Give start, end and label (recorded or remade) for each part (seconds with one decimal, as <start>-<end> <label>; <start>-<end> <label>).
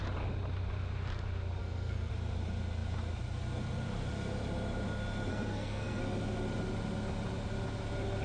0.0-1.6 recorded; 1.6-2.1 remade; 2.1-5.3 recorded; 5.3-6.0 remade; 6.0-8.2 recorded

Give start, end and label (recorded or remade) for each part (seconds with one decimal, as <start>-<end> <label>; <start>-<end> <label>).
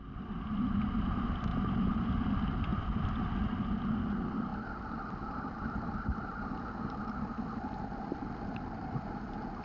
0.0-1.5 recorded; 1.5-2.1 remade; 2.1-2.7 recorded; 2.7-3.3 remade; 3.3-9.6 recorded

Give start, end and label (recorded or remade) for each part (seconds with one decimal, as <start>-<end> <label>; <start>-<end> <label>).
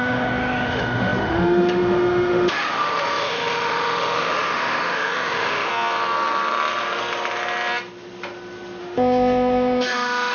0.0-5.7 remade; 5.7-8.8 recorded; 8.8-10.3 remade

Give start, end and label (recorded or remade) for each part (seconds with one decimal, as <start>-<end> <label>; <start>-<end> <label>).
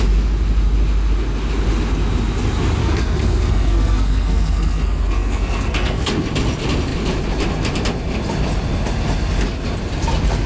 0.0-2.8 recorded; 2.8-6.1 remade; 6.1-10.5 recorded